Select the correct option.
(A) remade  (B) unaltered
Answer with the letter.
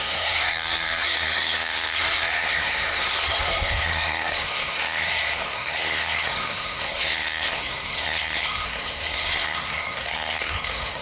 A